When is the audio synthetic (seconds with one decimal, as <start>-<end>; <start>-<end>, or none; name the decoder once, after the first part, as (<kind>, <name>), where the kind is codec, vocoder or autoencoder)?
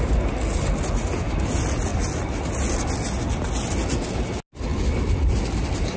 none